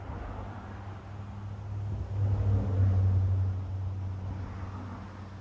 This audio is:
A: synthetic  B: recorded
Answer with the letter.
B